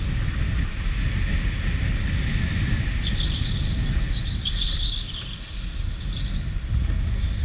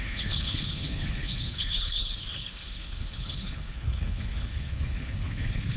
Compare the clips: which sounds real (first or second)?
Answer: first